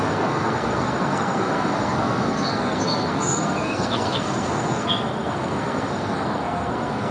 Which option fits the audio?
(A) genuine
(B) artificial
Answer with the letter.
B